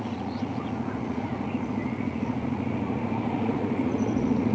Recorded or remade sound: remade